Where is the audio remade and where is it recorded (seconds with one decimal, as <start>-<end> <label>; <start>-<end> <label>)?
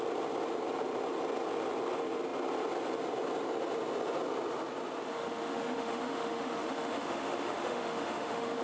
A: 0.0-5.1 recorded; 5.1-8.6 remade